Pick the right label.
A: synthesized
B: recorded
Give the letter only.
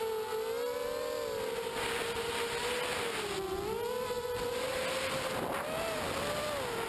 B